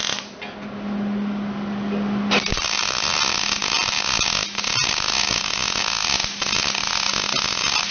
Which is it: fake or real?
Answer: real